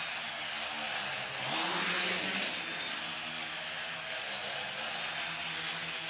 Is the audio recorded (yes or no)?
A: yes